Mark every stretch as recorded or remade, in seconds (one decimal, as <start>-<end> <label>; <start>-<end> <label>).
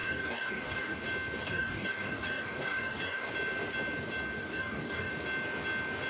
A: 0.0-1.0 remade; 1.0-1.4 recorded; 1.4-3.3 remade; 3.3-4.4 recorded; 4.4-5.1 remade; 5.1-6.1 recorded